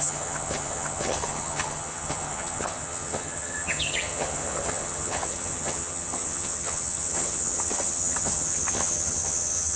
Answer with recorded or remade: remade